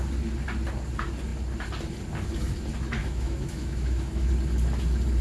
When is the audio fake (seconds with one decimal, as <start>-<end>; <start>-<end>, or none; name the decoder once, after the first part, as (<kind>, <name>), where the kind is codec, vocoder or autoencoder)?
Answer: 3.0-4.3 (autoencoder, DAC-VAE)